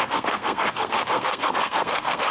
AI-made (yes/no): yes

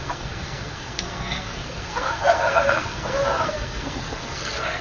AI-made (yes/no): yes